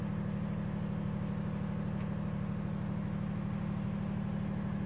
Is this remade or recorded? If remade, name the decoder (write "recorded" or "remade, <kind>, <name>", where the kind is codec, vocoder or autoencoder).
recorded